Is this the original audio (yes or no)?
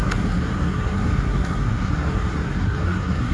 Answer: no